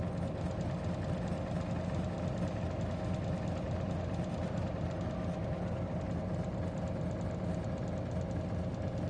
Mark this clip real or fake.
real